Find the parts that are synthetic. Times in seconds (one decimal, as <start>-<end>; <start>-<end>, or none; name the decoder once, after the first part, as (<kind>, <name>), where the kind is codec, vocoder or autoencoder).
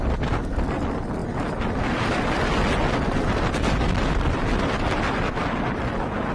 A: none